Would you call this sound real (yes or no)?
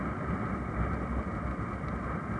yes